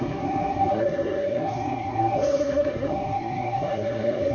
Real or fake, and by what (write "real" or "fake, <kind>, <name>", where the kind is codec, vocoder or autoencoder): fake, codec, SNAC